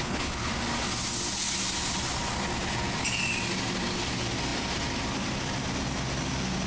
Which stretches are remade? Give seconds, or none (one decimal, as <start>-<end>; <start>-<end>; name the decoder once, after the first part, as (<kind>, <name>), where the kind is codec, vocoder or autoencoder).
0.0-0.5 (codec, HILCodec)